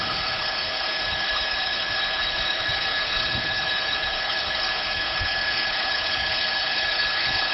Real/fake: fake